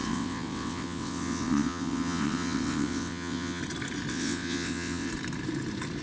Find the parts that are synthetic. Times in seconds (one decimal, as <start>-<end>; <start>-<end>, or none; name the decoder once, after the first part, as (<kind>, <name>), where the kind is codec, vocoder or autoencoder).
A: 0.0-3.6 (vocoder, WaveNeXt); 4.1-5.1